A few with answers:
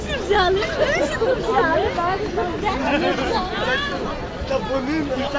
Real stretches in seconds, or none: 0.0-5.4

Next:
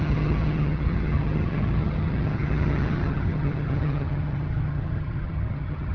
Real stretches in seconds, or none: none

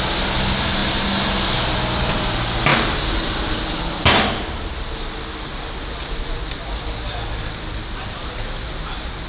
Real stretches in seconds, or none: 0.0-9.3

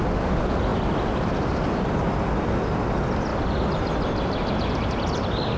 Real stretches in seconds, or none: 0.0-5.6

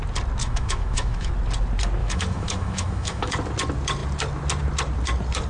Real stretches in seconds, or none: 0.0-0.4; 1.3-2.0; 3.3-5.5

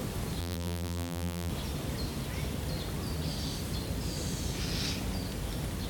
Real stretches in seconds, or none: 0.0-0.4; 1.5-5.9

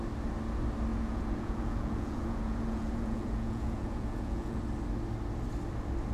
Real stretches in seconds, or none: 0.0-0.9; 4.6-6.1

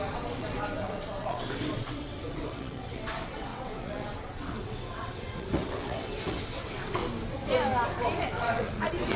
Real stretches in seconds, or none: 7.0-8.2